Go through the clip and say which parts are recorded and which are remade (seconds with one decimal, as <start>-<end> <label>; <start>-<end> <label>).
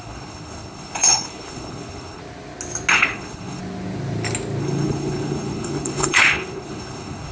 0.0-2.2 remade; 2.2-2.9 recorded; 2.9-3.6 remade; 3.6-4.6 recorded; 4.6-7.3 remade